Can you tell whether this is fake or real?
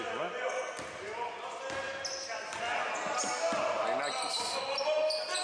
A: real